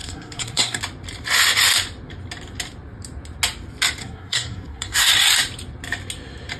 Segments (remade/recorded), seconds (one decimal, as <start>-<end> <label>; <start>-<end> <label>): 0.0-0.8 remade; 0.8-4.0 recorded; 4.0-5.1 remade; 5.1-6.6 recorded